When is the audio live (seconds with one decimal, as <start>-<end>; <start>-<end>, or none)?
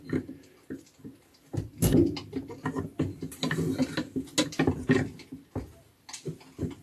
0.0-6.8